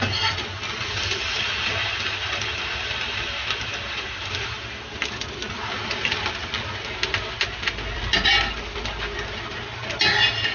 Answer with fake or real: real